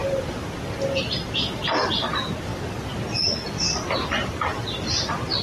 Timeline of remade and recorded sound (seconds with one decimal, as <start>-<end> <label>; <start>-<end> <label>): 0.0-2.5 remade; 2.5-3.5 recorded; 3.5-5.4 remade